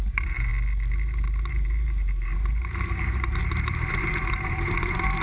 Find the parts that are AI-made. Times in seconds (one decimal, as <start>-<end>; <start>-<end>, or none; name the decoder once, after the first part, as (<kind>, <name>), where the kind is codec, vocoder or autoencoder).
0.0-0.5 (vocoder, BigVGAN v2); 1.5-5.2